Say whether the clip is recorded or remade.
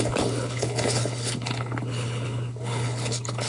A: remade